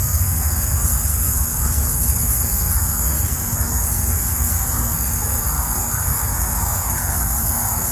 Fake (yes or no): yes